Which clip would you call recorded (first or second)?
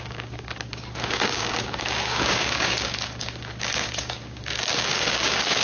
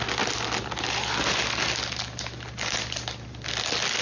second